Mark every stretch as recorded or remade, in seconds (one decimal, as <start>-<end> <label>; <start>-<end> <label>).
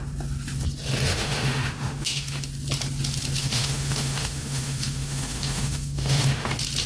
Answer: 0.0-1.1 recorded; 1.1-2.5 remade; 2.5-3.4 recorded; 3.4-6.5 remade; 6.5-6.9 recorded